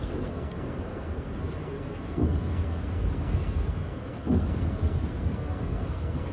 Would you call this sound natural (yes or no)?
no